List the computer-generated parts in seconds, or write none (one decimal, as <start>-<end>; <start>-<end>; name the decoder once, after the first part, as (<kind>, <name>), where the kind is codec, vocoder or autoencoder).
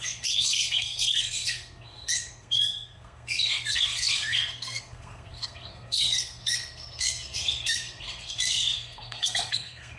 0.0-10.0 (codec, SNAC)